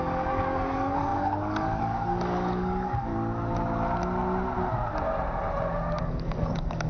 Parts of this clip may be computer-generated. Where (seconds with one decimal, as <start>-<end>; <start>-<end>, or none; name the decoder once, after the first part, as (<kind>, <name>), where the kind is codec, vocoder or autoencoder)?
0.0-3.1 (codec, DAC); 6.0-6.9

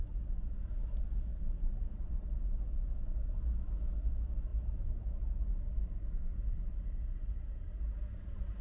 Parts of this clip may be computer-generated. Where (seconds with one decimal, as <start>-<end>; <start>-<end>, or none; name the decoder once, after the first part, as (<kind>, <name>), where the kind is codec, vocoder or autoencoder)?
none

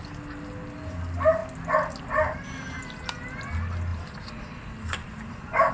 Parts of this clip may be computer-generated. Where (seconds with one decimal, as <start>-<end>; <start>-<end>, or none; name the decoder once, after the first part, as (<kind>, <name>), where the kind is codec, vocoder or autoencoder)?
3.9-5.7 (vocoder, BigVGAN v2)

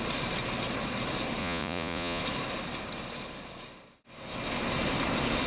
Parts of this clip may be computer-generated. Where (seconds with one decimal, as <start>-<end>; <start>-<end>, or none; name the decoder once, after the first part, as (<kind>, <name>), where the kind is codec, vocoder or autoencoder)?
1.4-2.2 (vocoder, Vocos)

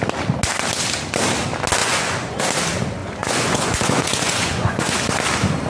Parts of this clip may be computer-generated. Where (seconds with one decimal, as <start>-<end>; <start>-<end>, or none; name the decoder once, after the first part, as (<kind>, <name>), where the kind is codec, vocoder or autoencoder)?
1.8-2.4 (vocoder, Vocos); 3.0-4.9

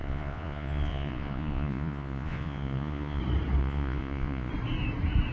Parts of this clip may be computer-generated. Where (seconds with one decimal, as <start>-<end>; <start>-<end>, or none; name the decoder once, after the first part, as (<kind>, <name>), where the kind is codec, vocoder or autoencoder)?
0.0-3.2 (vocoder, Vocos); 3.6-4.5

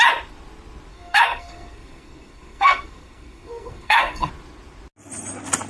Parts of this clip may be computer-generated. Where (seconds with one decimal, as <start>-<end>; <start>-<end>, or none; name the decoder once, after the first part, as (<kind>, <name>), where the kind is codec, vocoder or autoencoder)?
0.9-4.3 (codec, SNAC)